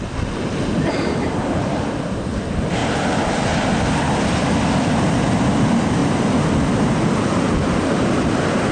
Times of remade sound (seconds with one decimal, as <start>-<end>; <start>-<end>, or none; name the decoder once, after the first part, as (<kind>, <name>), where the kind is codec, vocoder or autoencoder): none